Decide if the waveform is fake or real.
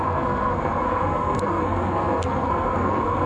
fake